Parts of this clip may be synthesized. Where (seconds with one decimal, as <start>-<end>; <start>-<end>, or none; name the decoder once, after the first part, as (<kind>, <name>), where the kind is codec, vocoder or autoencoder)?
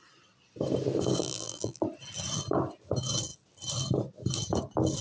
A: 1.2-1.8 (vocoder, BigVGAN v2)